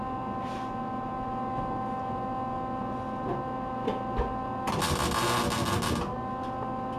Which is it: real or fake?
real